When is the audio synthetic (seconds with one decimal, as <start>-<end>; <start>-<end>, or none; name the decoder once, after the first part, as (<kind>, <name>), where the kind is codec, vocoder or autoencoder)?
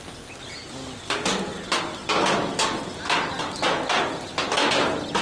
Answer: none